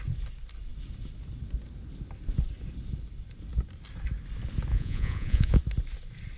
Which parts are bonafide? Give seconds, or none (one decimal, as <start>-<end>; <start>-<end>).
0.0-4.7; 5.6-6.4